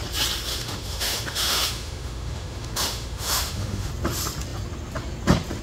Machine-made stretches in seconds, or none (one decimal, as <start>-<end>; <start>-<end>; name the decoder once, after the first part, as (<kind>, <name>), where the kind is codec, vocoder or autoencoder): 0.5-3.9 (autoencoder, DAC-VAE)